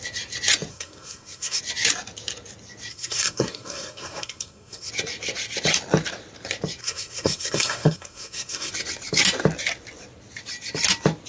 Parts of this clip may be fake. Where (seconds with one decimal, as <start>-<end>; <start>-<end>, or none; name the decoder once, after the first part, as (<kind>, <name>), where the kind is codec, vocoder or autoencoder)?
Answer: 0.7-1.6 (codec, SNAC); 2.9-4.9; 6.8-8.7